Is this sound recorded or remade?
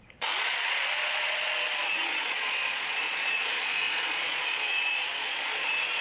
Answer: remade